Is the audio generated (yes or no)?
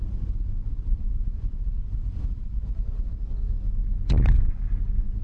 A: yes